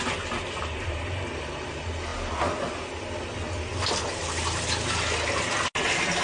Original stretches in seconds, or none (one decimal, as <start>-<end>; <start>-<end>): 0.0-6.2